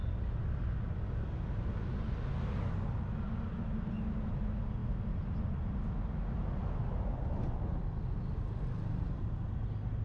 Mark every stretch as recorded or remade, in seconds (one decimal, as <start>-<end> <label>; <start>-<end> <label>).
0.0-10.0 recorded